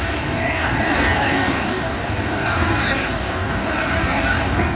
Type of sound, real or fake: fake